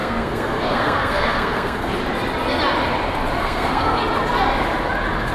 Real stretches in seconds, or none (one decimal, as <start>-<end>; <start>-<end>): 1.9-3.4; 4.0-5.3